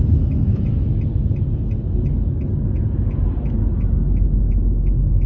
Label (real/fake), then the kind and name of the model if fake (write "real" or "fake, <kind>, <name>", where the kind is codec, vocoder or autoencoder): real